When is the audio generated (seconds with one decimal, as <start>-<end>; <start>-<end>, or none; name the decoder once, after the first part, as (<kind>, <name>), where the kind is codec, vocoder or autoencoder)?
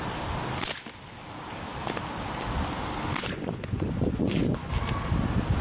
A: 3.2-4.7 (vocoder, Vocos)